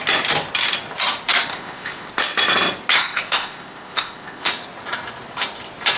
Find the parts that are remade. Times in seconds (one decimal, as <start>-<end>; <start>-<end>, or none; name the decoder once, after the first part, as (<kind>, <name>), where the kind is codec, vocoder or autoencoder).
1.5-2.1 (codec, ZipCodec); 2.9-4.5